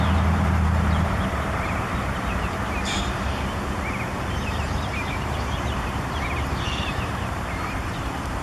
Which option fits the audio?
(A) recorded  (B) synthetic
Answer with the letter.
B